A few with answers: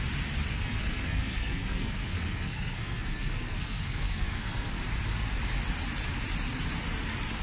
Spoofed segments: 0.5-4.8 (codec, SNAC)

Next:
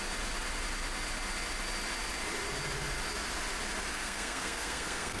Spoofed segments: 3.9-5.2 (codec, SNAC)

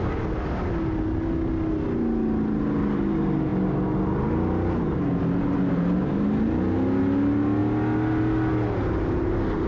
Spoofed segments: none

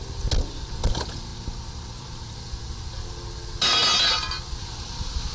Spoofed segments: none